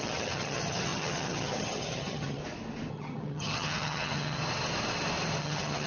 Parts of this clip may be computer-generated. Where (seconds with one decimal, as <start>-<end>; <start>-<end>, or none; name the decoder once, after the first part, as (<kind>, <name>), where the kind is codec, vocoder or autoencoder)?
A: 0.0-2.4 (vocoder, HiFi-GAN); 2.9-4.4; 5.4-5.9